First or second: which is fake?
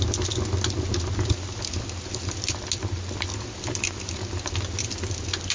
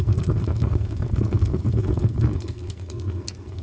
second